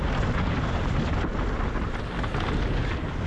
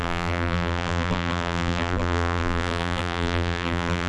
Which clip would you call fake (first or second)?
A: second